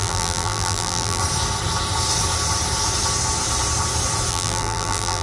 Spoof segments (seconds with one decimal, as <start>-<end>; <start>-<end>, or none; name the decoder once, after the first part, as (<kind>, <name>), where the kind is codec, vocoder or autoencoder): 0.0-1.2 (vocoder, BigVGAN v2); 4.3-5.2